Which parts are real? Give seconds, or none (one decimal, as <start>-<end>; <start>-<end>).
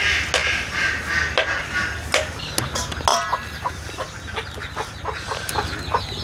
0.0-3.1; 5.5-6.2